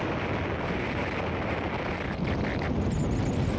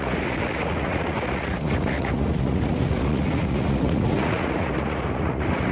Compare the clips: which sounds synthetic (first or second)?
second